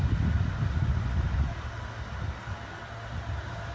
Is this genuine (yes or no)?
yes